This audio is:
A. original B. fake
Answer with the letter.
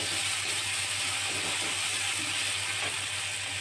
A